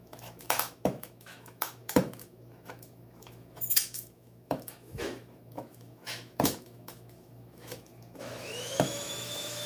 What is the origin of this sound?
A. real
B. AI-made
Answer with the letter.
B